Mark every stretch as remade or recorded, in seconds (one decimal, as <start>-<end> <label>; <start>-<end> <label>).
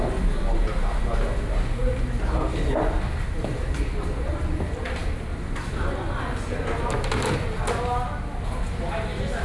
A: 0.0-9.4 recorded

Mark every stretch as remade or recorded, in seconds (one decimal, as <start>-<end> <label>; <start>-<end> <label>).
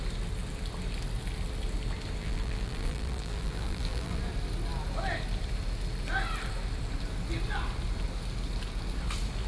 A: 0.0-2.2 recorded; 2.2-4.2 remade; 4.2-9.5 recorded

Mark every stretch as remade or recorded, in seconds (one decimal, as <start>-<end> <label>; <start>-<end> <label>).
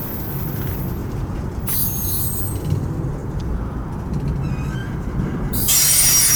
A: 0.0-1.0 recorded; 1.0-2.3 remade; 2.3-3.2 recorded; 3.2-3.9 remade; 3.9-4.8 recorded; 4.8-6.4 remade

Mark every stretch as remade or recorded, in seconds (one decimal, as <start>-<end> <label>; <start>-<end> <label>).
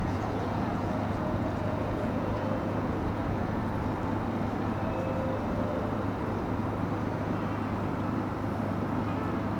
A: 0.0-3.6 remade; 3.6-9.6 recorded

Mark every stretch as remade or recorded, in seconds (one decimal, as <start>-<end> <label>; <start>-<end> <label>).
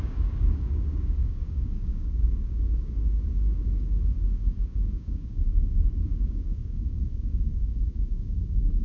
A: 0.0-8.8 remade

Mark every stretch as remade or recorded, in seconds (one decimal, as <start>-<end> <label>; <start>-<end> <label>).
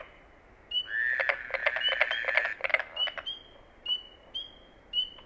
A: 0.0-5.3 recorded